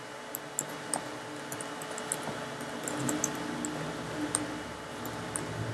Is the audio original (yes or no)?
yes